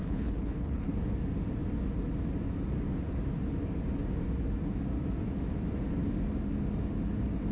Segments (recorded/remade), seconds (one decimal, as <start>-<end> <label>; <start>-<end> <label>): 0.0-0.9 remade; 0.9-7.5 recorded